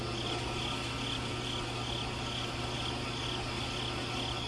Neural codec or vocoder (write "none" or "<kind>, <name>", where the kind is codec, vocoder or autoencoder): none